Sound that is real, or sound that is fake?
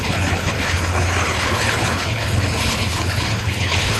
fake